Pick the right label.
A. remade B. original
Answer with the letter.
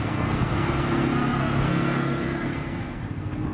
A